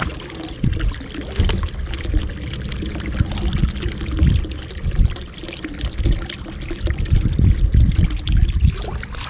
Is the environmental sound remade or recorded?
recorded